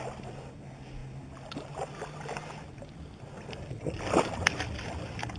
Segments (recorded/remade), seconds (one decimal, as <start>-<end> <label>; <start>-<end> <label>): 0.0-5.4 recorded